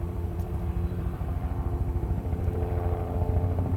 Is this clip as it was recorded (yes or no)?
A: no